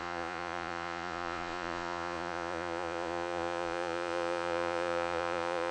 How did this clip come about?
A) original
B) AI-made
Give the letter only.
B